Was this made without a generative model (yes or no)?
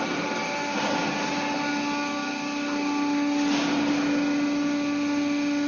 yes